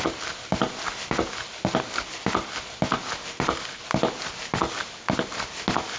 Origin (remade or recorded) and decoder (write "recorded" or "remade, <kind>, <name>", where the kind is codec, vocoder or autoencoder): recorded